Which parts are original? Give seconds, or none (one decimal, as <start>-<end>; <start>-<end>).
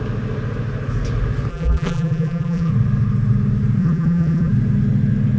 0.0-1.5; 2.7-3.8; 4.5-5.4